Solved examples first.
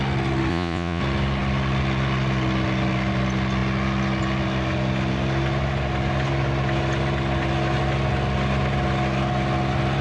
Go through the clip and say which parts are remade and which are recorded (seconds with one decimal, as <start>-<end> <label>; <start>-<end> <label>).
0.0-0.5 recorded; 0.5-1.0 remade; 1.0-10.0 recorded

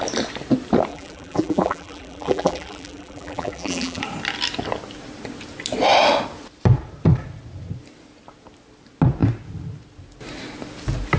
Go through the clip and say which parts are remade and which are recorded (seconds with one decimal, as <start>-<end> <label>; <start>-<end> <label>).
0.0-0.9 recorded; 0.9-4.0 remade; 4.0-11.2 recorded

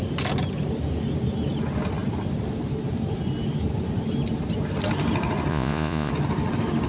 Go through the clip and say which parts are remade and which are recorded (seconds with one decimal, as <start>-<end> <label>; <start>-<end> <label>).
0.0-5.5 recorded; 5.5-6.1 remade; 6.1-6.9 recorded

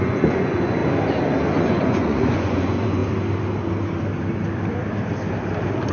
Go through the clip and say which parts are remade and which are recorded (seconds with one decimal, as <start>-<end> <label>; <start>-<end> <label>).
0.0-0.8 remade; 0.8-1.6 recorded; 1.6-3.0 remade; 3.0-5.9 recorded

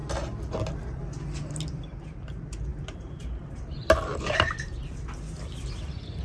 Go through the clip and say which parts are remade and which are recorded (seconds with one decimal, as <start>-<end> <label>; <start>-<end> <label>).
0.0-6.2 recorded